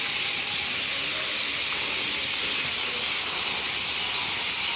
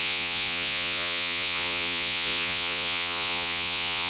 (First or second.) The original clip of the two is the first